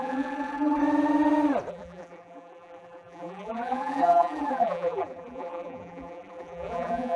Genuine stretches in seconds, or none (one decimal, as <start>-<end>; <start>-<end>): 0.8-1.7